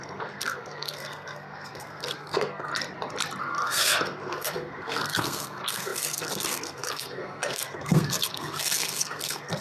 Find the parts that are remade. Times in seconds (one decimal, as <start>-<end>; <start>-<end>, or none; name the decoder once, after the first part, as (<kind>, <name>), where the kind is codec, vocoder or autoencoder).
0.0-2.7 (codec, SNAC); 3.4-9.6